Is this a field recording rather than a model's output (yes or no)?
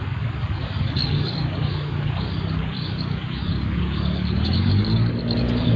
no